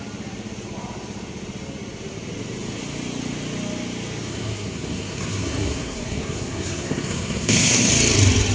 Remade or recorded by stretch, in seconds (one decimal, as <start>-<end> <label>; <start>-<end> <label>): 0.0-4.3 recorded; 4.3-7.9 remade; 7.9-8.5 recorded